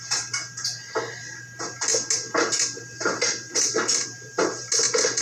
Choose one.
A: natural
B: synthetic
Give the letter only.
A